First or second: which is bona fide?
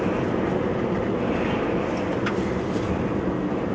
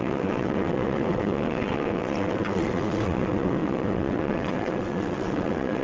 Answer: first